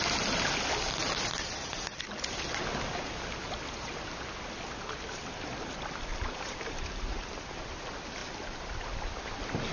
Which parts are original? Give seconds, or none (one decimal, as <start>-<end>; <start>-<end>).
0.0-6.1; 7.4-9.7